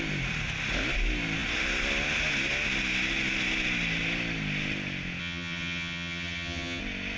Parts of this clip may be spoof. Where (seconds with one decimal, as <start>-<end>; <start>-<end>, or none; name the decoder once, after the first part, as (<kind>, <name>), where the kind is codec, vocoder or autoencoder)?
5.2-6.8 (vocoder, HiFi-GAN)